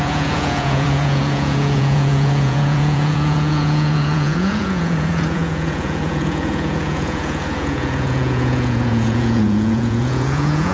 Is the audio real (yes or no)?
no